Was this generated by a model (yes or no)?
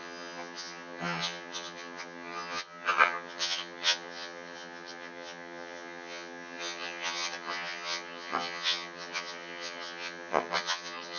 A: yes